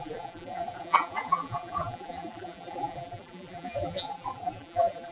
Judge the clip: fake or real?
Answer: fake